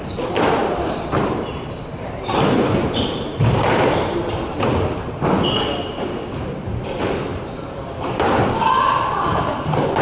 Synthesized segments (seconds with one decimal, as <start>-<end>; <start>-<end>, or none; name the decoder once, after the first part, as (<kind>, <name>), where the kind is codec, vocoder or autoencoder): 0.6-5.2 (vocoder, BigVGAN v2); 7.3-8.8